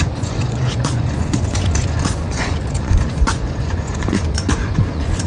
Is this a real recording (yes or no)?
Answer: no